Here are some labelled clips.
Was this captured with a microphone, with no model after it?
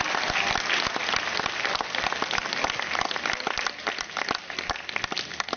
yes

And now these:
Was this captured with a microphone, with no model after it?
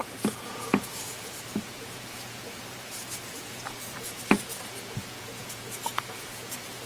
no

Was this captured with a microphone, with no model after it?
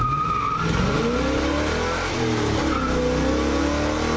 yes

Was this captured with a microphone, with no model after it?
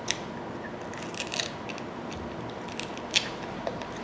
yes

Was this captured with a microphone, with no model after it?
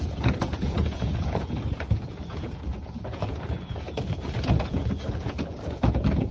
no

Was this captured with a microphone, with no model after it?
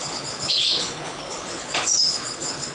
no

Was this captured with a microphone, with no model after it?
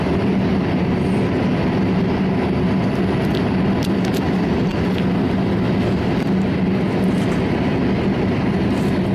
yes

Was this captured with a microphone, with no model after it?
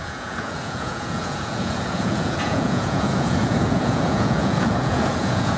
no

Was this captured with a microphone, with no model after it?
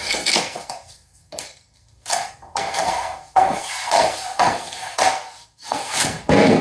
no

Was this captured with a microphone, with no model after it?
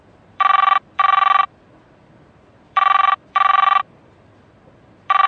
no